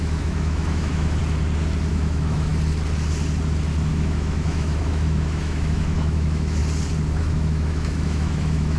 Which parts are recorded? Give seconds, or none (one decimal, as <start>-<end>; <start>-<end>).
1.2-1.9; 2.5-3.9; 6.6-7.2